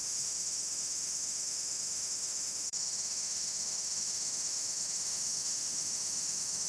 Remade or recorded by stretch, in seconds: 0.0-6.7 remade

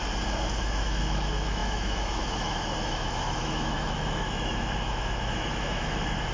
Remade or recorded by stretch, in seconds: 0.0-0.6 recorded; 0.6-6.3 remade

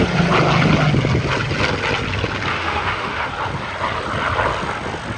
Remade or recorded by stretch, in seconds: 0.0-2.5 recorded; 2.5-3.3 remade; 3.3-5.2 recorded

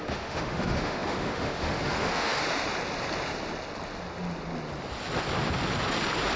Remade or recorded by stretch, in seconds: 0.0-2.4 remade; 2.4-6.4 recorded

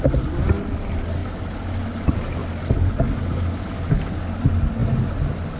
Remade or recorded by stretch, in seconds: 0.0-5.6 recorded